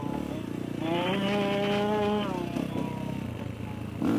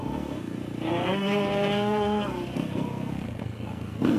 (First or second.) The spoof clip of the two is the second